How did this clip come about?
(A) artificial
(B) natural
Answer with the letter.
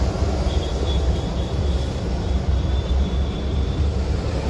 A